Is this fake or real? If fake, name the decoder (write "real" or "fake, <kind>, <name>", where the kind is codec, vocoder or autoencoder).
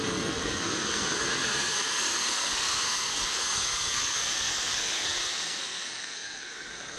fake, codec, SNAC